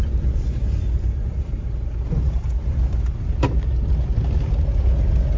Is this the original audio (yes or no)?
yes